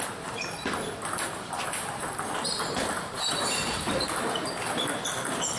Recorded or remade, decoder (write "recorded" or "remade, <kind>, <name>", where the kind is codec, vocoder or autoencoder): remade, vocoder, BigVGAN v2